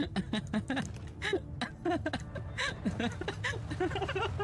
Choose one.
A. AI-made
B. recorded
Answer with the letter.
B